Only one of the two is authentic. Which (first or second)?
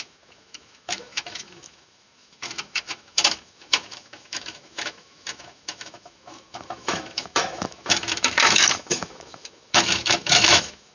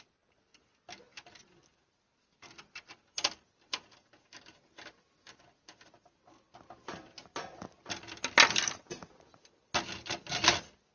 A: second